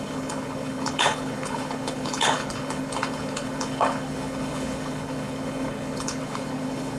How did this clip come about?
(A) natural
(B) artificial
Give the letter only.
B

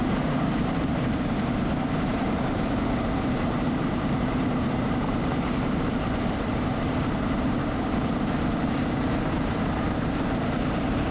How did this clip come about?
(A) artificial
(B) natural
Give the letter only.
A